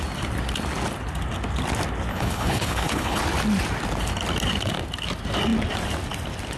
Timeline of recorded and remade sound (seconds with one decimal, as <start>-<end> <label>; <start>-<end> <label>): 0.0-2.1 recorded; 2.1-3.2 remade; 3.2-6.6 recorded